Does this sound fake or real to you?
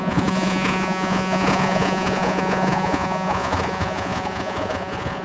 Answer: fake